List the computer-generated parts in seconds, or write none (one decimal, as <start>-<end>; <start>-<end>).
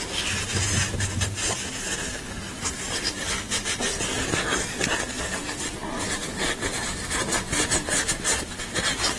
none